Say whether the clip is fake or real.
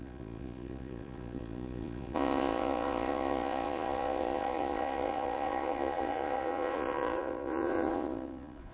fake